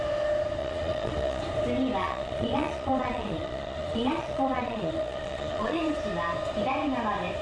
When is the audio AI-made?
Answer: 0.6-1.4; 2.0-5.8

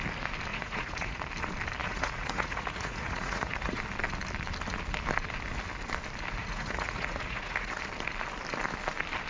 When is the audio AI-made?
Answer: 0.5-1.2; 1.8-3.8; 6.4-7.7

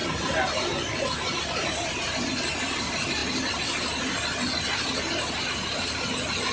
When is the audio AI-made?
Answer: none

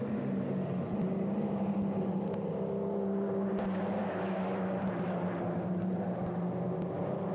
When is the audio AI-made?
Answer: 4.0-4.8

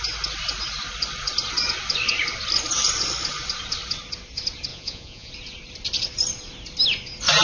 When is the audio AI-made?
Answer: 4.7-5.3

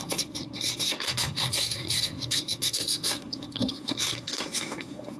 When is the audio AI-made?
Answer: 0.0-5.2

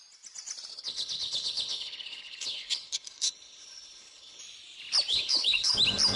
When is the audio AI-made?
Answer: 0.7-4.4; 5.1-5.7

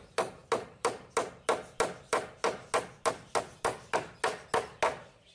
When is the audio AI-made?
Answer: none